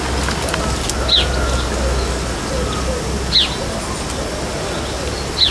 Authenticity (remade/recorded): recorded